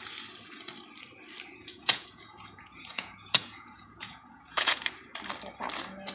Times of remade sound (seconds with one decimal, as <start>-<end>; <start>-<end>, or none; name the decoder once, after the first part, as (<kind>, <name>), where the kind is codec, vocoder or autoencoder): 1.5-4.8 (vocoder, Vocos)